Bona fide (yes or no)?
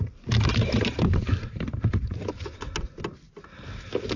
yes